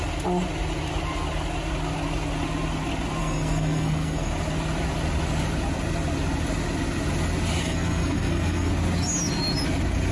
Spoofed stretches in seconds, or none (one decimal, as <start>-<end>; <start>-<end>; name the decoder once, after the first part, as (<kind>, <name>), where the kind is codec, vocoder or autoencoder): 3.2-4.3 (codec, SNAC); 7.6-8.7